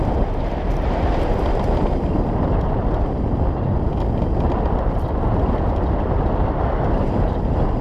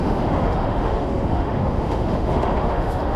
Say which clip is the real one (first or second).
first